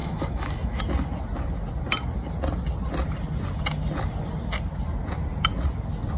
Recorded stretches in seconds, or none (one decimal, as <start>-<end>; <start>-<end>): 0.8-6.2